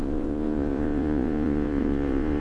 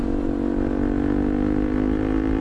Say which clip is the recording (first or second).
second